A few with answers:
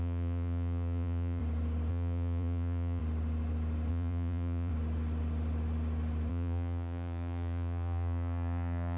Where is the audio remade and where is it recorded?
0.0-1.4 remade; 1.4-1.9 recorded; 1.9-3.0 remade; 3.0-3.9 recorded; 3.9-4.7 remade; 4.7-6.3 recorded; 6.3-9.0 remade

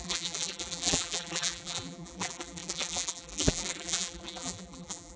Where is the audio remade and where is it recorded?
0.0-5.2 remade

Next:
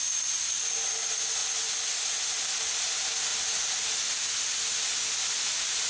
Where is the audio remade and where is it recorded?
0.0-5.9 recorded

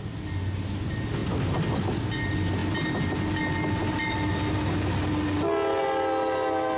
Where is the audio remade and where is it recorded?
0.0-6.8 recorded